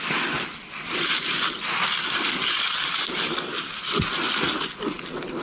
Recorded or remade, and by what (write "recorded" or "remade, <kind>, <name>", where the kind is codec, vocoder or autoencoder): recorded